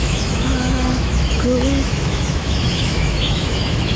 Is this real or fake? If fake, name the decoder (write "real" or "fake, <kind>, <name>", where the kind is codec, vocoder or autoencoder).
fake, autoencoder, DAC-VAE